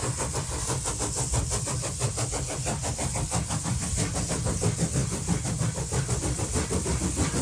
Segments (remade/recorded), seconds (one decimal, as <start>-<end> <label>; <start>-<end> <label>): 0.0-7.4 recorded